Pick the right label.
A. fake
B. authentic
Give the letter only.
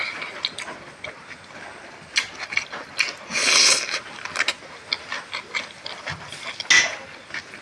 B